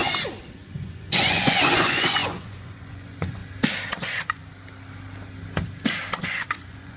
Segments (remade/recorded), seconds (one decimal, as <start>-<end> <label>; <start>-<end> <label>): 0.0-0.7 recorded; 0.7-3.4 remade; 3.4-4.0 recorded; 4.0-4.4 remade; 4.4-6.2 recorded; 6.2-7.0 remade

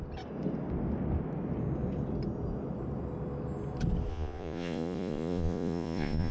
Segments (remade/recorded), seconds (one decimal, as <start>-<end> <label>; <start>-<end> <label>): 0.0-4.1 recorded; 4.1-6.3 remade

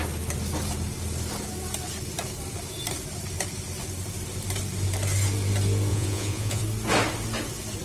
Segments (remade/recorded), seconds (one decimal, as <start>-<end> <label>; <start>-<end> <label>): 0.0-5.9 recorded; 5.9-6.6 remade; 6.6-7.8 recorded

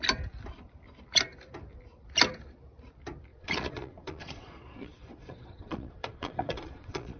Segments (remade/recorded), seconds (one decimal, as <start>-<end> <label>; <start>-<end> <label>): 0.0-3.3 recorded; 3.3-7.2 remade

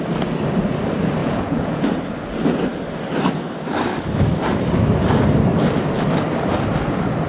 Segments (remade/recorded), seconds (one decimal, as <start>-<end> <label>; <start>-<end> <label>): 0.0-1.2 recorded; 1.2-1.8 remade; 1.8-7.3 recorded

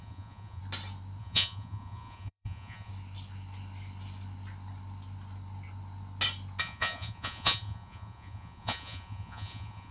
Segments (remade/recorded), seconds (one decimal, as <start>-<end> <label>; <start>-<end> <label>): 0.0-0.6 remade; 0.6-1.2 recorded; 1.2-2.9 remade; 2.9-6.6 recorded; 6.6-9.9 remade